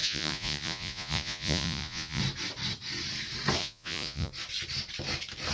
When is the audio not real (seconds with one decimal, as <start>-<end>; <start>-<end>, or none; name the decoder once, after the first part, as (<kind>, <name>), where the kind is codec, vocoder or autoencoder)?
0.0-2.2 (vocoder, Vocos); 3.6-4.3